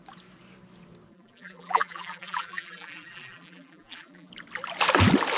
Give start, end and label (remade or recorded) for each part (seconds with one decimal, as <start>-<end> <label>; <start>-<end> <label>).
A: 0.0-1.1 recorded; 1.1-4.3 remade; 4.3-5.4 recorded